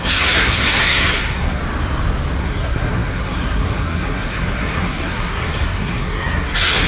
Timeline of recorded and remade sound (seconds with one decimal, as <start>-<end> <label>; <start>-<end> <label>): 0.0-1.6 remade; 1.6-2.4 recorded; 2.4-6.9 remade